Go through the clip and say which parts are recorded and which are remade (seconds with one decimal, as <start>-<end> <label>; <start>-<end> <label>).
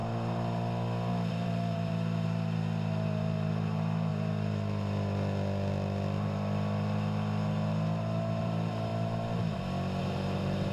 0.0-1.1 recorded; 1.1-4.1 remade; 4.1-8.4 recorded; 8.4-8.9 remade; 8.9-10.0 recorded; 10.0-10.7 remade